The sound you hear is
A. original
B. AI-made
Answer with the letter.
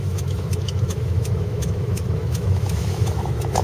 B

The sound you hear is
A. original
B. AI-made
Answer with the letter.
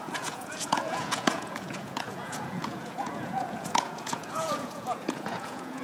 B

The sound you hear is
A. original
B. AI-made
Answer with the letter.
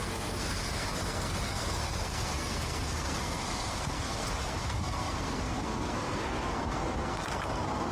B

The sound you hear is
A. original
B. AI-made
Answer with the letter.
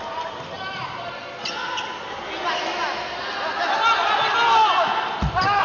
A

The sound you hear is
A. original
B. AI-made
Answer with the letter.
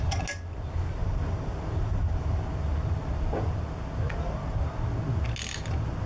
A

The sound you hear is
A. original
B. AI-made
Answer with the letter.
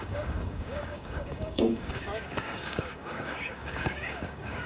B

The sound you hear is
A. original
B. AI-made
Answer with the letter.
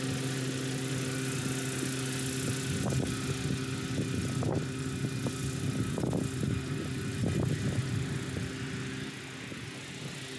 A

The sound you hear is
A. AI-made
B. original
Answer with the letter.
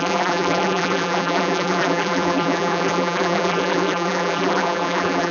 A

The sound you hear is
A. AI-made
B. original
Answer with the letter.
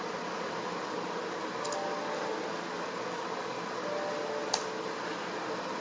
B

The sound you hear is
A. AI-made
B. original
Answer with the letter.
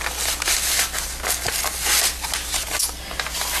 B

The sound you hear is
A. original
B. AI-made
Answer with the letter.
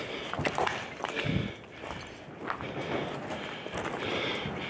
A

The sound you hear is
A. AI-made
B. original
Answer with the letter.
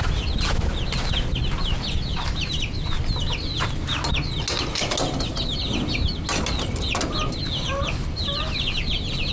B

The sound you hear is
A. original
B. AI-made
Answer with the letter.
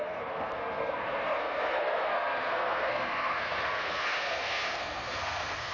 B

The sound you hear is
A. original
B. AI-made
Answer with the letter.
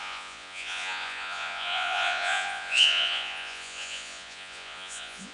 B